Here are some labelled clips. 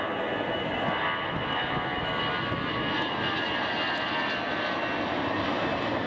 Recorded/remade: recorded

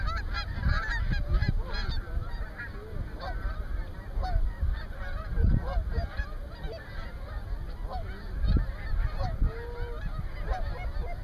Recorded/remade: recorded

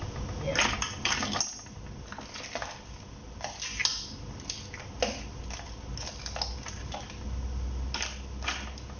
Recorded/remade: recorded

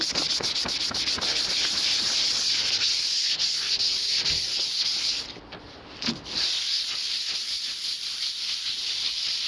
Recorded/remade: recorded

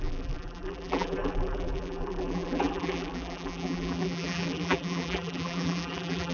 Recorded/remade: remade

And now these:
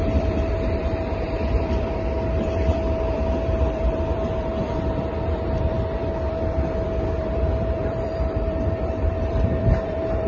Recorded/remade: remade